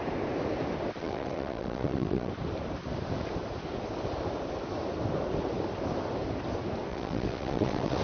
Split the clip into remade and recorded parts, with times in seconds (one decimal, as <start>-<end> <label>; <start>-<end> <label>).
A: 0.0-1.0 recorded; 1.0-2.3 remade; 2.3-6.9 recorded; 6.9-8.0 remade